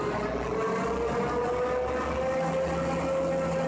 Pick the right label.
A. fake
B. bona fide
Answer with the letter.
B